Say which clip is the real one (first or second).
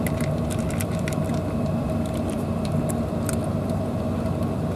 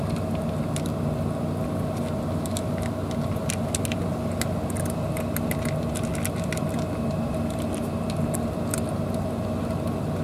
second